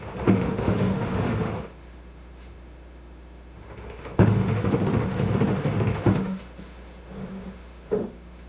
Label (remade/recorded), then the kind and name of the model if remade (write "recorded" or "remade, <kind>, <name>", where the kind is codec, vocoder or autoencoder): remade, autoencoder, DAC-VAE